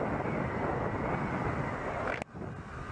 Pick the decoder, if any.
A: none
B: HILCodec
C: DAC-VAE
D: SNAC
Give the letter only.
A